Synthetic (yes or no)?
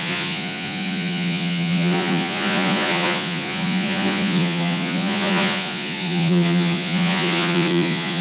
yes